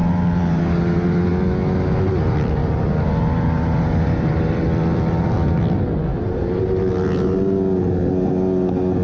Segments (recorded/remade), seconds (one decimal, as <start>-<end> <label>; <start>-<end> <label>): 0.0-0.6 remade; 0.6-2.6 recorded; 2.6-4.6 remade; 4.6-6.1 recorded; 6.1-6.6 remade; 6.6-9.0 recorded